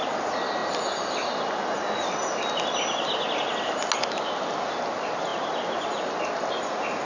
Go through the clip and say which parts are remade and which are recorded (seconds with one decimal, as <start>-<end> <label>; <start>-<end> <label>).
0.0-7.1 recorded